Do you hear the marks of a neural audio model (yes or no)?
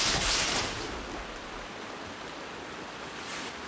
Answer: no